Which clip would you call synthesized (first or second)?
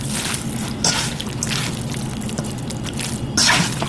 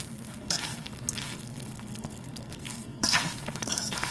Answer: second